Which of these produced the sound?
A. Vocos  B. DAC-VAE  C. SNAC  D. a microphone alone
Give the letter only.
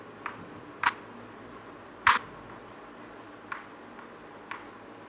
D